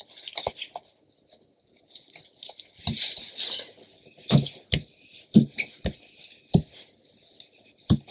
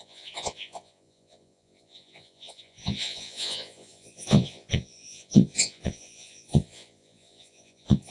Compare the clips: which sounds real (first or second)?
first